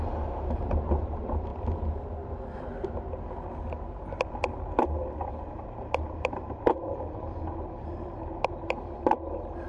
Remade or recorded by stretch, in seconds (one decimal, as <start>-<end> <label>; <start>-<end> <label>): 0.0-1.5 remade; 1.5-5.3 recorded; 5.3-9.7 remade